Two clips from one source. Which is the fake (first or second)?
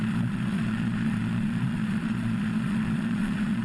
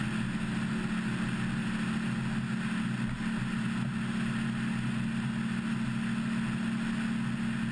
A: first